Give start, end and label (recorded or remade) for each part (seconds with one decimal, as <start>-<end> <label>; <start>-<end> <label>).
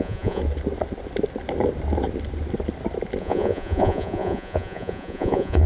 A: 0.0-0.4 remade; 0.4-3.2 recorded; 3.2-5.7 remade